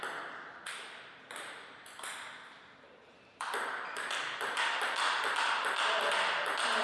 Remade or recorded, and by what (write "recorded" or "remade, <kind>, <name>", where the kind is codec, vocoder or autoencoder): recorded